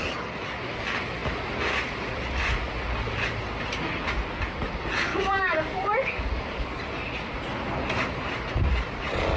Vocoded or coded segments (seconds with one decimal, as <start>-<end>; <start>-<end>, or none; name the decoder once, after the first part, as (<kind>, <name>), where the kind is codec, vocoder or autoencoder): 5.1-6.8 (codec, DAC)